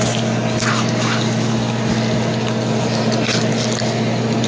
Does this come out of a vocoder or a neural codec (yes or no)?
no